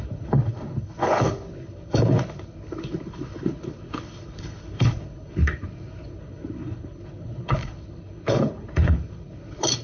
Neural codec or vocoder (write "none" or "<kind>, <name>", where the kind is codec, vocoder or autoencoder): codec, HILCodec